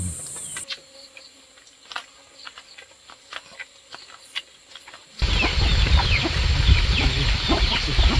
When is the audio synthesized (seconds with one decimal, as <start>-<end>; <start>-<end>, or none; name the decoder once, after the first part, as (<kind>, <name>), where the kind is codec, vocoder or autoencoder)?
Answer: 5.7-7.7 (vocoder, BigVGAN v2)

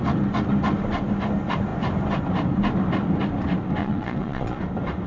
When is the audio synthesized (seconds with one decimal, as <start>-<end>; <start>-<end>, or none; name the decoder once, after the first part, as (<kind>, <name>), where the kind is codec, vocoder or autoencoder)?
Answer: 3.8-4.6 (vocoder, Vocos)

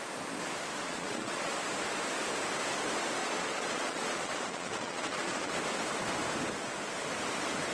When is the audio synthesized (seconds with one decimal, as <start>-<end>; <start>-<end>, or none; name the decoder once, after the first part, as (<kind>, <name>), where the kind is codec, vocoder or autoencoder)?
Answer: 0.8-1.5 (vocoder, Vocos); 3.2-5.5